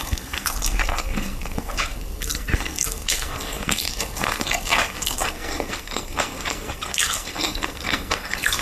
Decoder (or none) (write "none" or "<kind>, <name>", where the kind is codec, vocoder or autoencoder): codec, SNAC